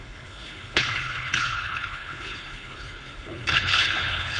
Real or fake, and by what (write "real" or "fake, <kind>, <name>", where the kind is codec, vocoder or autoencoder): fake, codec, HILCodec